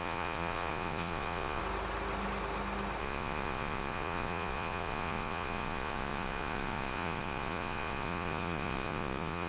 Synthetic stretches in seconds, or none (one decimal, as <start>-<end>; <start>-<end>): 0.0-1.6; 3.0-9.5